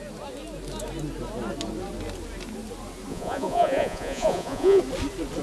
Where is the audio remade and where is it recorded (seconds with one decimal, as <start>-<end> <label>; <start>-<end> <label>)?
0.0-3.1 recorded; 3.1-4.8 remade; 4.8-5.4 recorded